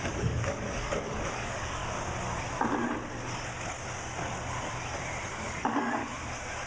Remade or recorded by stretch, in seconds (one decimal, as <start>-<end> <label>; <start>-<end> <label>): 0.0-1.8 remade; 1.8-5.3 recorded; 5.3-6.0 remade; 6.0-6.7 recorded